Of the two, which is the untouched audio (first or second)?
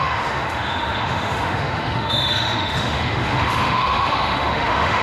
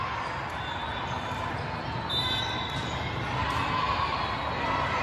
second